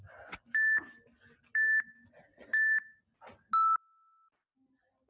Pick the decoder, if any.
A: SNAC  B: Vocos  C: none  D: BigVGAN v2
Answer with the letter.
C